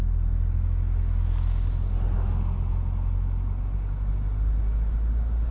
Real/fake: real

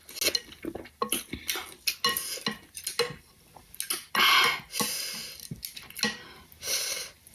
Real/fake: real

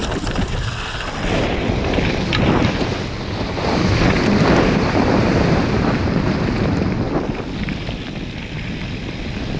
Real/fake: real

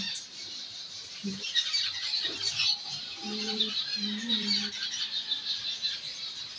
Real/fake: fake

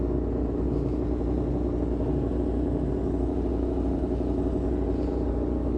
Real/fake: real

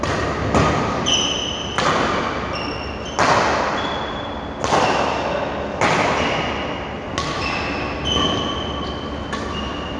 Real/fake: real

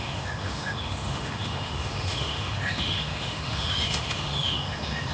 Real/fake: fake